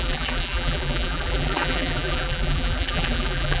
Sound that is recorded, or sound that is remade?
remade